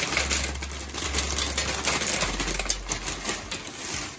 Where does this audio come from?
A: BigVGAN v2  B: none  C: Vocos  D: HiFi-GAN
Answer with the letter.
B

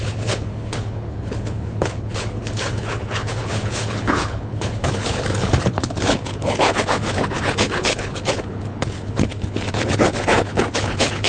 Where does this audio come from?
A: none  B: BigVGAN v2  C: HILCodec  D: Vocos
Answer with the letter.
C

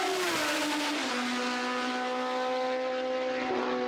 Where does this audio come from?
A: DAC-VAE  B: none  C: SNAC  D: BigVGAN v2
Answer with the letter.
B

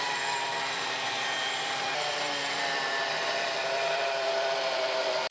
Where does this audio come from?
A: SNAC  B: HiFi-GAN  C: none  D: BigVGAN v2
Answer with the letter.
D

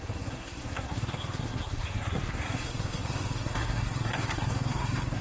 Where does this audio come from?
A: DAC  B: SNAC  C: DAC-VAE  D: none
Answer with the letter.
B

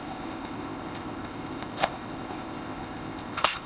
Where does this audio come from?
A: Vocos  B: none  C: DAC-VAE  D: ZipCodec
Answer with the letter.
D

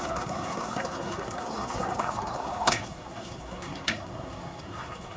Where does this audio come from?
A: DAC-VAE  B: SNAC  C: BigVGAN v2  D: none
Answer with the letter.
B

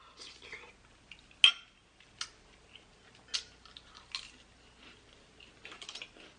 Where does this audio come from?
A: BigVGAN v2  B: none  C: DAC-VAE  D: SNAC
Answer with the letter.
B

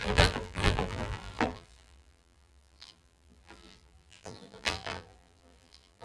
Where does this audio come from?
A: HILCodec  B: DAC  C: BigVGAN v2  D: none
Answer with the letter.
C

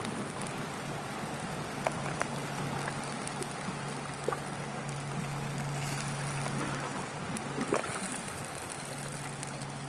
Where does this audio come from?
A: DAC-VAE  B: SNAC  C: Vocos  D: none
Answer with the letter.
D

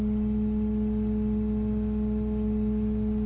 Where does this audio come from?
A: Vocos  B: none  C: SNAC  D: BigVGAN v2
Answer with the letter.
B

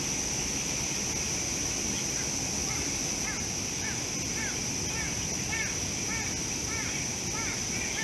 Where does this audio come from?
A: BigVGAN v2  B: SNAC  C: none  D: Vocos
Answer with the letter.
C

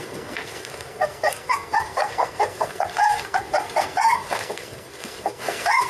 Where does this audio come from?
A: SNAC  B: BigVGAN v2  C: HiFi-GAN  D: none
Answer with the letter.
A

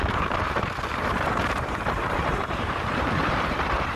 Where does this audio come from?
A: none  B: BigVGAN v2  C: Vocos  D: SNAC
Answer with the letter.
B